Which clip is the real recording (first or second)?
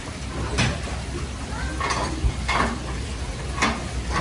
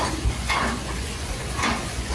first